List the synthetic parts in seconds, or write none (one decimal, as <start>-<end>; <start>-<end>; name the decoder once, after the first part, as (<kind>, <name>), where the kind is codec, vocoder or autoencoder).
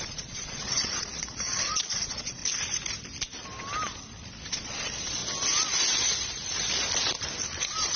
0.0-2.4 (vocoder, Vocos); 4.5-5.2; 7.6-8.0